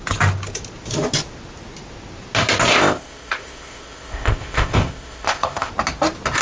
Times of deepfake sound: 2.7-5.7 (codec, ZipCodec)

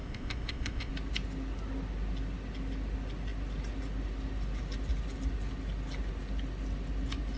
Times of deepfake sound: 0.0-0.9 (codec, ZipCodec)

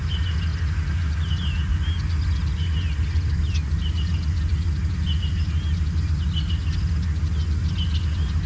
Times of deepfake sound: none